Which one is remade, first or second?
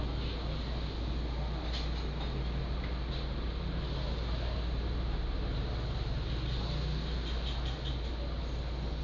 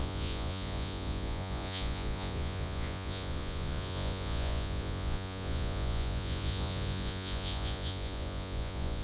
second